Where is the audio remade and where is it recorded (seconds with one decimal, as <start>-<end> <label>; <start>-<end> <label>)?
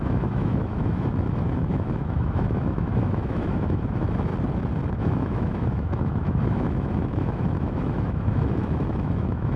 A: 0.0-4.3 remade; 4.3-4.9 recorded; 4.9-9.6 remade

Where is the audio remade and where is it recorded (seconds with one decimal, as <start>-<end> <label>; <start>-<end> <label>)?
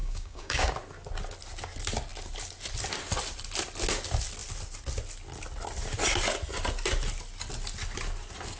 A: 0.0-0.7 remade; 0.7-8.6 recorded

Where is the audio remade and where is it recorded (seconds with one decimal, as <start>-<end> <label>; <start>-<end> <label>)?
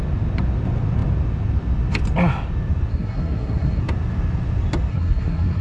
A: 0.0-2.9 recorded; 2.9-3.8 remade; 3.8-4.9 recorded; 4.9-5.6 remade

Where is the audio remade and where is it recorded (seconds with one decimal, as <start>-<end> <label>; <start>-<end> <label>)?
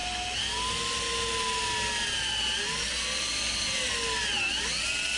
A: 0.0-5.2 recorded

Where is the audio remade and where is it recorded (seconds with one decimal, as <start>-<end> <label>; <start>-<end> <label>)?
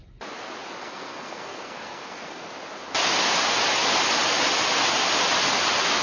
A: 0.0-0.8 recorded; 0.8-2.5 remade; 2.5-6.0 recorded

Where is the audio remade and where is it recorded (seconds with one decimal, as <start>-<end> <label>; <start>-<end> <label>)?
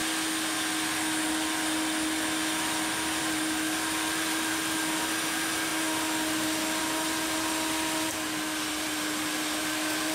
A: 0.0-3.2 recorded; 3.2-10.1 remade